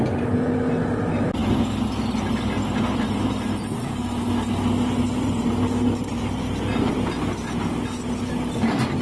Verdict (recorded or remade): recorded